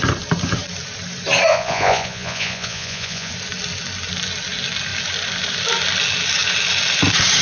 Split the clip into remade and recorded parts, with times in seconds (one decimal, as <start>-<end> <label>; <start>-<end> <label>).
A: 0.0-1.5 recorded; 1.5-3.3 remade; 3.3-7.4 recorded